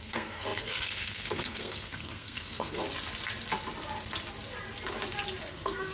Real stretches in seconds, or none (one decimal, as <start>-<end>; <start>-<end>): 2.8-5.5